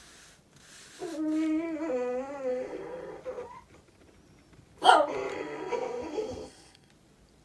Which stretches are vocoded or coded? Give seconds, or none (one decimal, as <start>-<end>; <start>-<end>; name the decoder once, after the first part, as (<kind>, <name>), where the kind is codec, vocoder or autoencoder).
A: 2.5-3.2 (codec, SNAC); 5.3-6.9